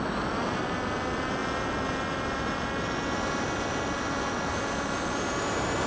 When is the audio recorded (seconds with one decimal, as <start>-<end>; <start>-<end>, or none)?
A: 0.0-5.9